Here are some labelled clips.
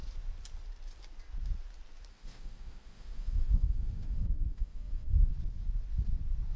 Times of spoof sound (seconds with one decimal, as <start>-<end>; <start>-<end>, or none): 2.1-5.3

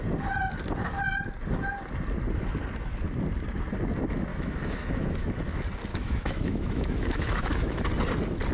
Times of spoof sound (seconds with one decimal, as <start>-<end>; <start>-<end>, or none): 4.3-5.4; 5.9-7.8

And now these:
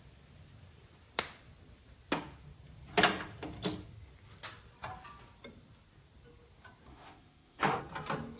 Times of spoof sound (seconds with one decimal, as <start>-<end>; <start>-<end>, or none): 6.9-7.8

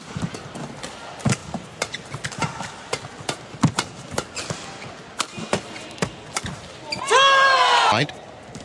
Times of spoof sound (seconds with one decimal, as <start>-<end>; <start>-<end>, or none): none

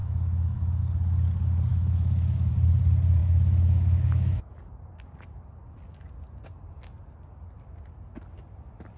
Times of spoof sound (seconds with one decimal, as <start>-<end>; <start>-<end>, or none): 0.0-0.8; 1.7-2.5; 3.2-4.5

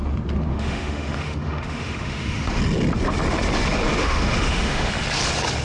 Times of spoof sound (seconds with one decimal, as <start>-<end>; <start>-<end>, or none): 0.5-2.6; 3.9-4.9